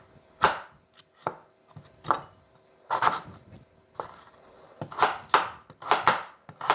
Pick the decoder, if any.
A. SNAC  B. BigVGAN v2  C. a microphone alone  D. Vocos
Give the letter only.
C